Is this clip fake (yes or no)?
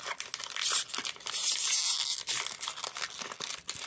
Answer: no